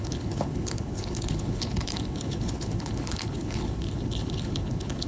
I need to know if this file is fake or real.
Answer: fake